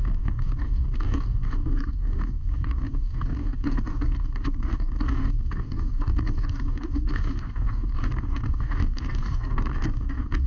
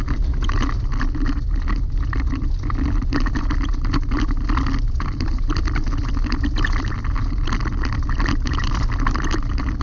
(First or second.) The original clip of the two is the second